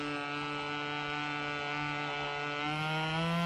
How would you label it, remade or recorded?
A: recorded